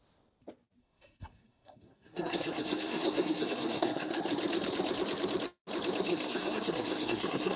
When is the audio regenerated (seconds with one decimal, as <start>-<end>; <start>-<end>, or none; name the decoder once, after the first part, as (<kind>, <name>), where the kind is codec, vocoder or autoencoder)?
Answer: 0.8-4.1 (codec, SNAC); 6.1-7.6